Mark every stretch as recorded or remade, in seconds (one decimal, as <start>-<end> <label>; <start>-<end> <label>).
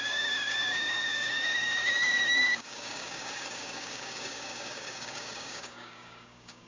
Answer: 0.0-6.7 remade